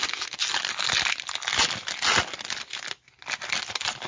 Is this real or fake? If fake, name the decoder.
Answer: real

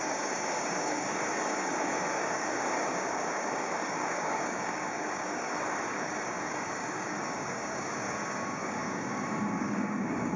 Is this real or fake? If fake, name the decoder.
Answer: fake, codec, DAC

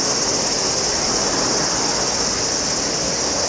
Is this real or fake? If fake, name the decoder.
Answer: real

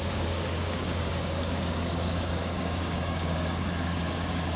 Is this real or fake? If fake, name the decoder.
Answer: fake, codec, DAC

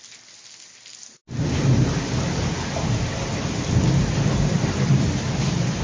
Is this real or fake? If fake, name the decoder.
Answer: real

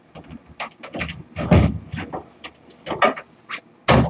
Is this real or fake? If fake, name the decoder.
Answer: real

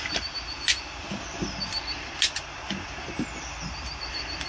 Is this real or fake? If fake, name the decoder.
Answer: real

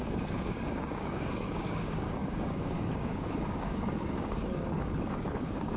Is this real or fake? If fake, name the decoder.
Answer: fake, codec, DAC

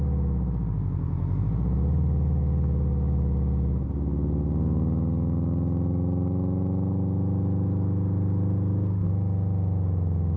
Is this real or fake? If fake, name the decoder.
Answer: real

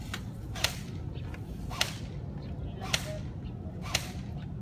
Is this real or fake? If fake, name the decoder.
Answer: real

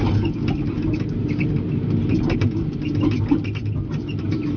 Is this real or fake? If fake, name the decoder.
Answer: real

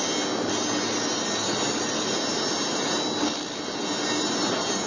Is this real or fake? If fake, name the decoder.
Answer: real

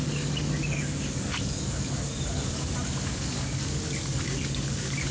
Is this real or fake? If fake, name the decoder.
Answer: fake, codec, DAC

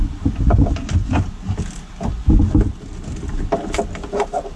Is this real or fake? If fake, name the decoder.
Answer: real